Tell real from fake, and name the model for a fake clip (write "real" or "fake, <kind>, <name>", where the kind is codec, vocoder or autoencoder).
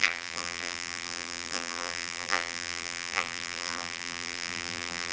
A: fake, vocoder, BigVGAN v2